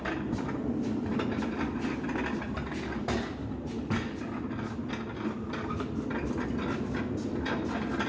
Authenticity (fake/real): real